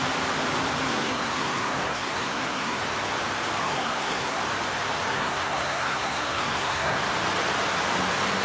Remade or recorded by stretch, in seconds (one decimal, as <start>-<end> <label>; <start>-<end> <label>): 0.0-0.9 recorded; 0.9-2.8 remade; 2.8-3.6 recorded; 3.6-4.4 remade; 4.4-5.1 recorded; 5.1-7.0 remade; 7.0-8.4 recorded